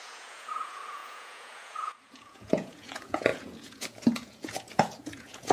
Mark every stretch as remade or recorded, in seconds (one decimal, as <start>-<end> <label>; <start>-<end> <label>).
0.0-5.5 remade